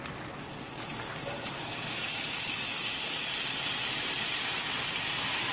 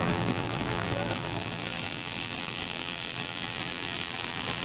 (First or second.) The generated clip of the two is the second